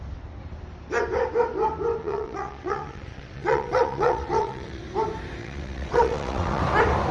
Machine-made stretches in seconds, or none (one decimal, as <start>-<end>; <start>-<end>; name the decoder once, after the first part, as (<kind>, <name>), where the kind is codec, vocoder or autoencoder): 2.0-4.8 (vocoder, WaveNeXt); 5.4-6.6